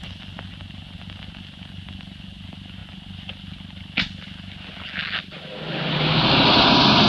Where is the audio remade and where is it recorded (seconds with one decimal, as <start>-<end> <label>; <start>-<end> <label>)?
0.0-7.1 recorded